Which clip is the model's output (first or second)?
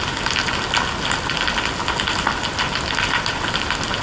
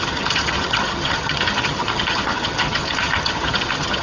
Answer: second